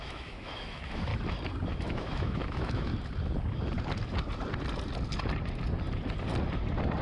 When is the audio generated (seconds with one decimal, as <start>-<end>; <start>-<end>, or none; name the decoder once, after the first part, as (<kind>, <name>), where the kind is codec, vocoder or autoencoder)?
0.0-1.1 (autoencoder, DAC-VAE); 1.7-2.9